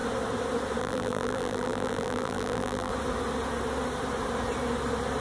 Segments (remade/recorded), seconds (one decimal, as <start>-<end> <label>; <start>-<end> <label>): 0.0-0.8 recorded; 0.8-2.9 remade; 2.9-5.2 recorded